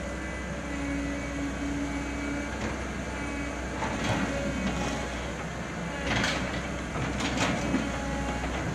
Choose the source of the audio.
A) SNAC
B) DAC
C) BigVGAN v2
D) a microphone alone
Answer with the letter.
D